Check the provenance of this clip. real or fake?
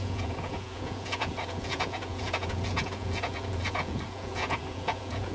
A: fake